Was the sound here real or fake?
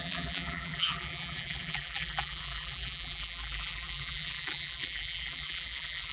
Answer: fake